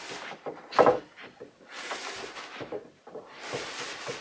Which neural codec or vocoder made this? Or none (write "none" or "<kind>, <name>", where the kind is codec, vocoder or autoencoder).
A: none